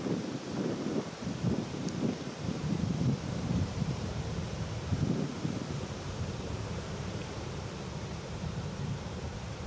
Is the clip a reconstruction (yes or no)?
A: yes